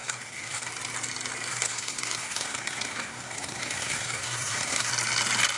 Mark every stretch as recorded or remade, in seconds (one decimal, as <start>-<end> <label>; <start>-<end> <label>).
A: 0.0-0.7 remade; 0.7-1.5 recorded; 1.5-4.9 remade; 4.9-5.6 recorded